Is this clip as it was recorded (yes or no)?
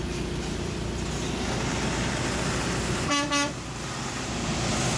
yes